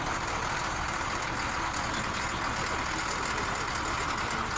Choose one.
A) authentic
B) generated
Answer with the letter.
A